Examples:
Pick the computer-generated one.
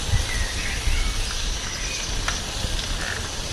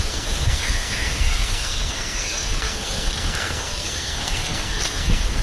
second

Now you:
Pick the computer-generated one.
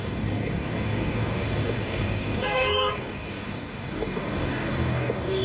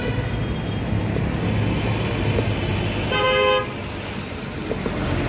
first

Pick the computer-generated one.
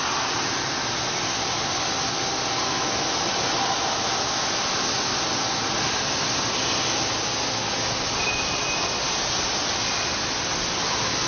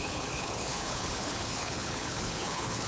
second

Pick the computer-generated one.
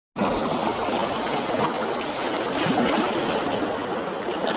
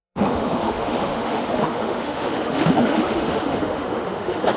second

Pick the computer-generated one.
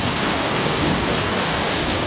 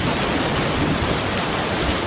first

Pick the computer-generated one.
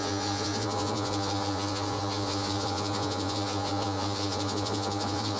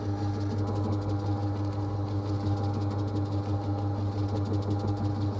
first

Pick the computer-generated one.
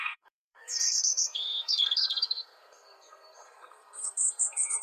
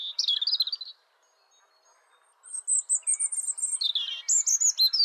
first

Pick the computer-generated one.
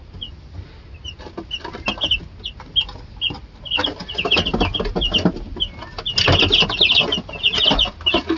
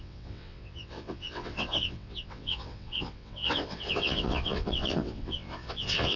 second